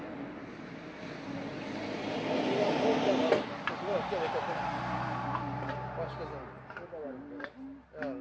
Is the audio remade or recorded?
recorded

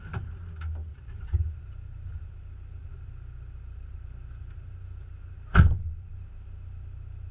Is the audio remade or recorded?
recorded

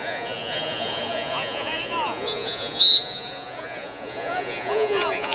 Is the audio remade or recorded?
remade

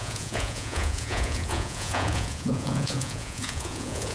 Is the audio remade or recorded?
remade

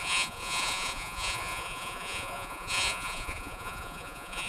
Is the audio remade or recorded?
remade